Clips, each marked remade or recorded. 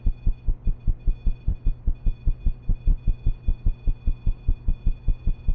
recorded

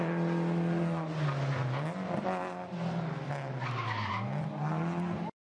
recorded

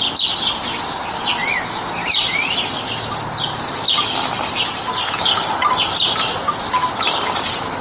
recorded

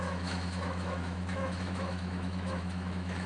remade